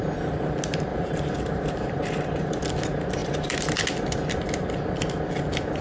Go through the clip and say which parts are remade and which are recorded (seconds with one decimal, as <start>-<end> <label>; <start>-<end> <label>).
0.0-0.9 recorded; 0.9-2.6 remade; 2.6-3.2 recorded; 3.2-3.8 remade; 3.8-5.8 recorded